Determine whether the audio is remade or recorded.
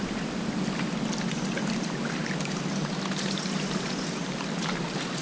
recorded